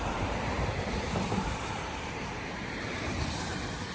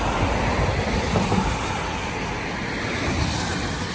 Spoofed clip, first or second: first